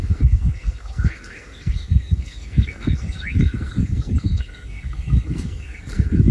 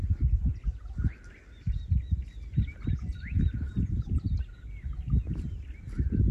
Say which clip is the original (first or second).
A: second